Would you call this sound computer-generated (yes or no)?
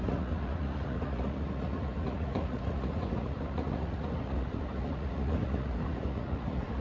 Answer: yes